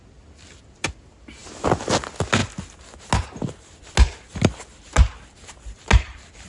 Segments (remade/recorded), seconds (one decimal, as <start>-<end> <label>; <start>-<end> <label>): 0.0-6.5 recorded